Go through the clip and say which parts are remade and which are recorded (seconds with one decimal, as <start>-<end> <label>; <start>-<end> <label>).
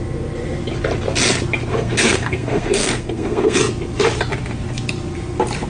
0.0-1.7 recorded; 1.7-3.6 remade; 3.6-5.7 recorded